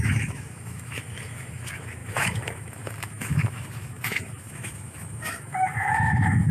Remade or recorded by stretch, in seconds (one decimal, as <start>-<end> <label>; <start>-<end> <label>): 0.0-6.5 remade